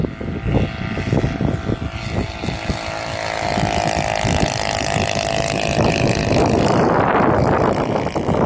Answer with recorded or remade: recorded